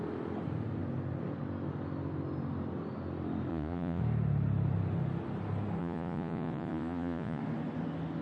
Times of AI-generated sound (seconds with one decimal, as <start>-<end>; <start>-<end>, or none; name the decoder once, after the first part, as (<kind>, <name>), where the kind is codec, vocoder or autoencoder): 3.5-4.0 (vocoder, Vocos); 5.8-7.4